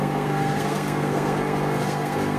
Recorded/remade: remade